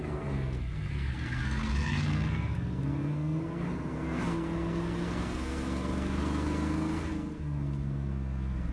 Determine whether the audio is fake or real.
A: fake